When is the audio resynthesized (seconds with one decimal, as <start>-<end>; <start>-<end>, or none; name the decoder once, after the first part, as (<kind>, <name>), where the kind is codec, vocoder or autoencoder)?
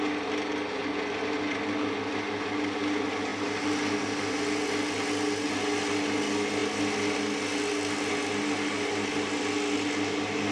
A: none